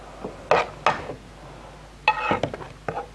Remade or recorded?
recorded